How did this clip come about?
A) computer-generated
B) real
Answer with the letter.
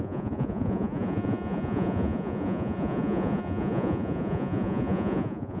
A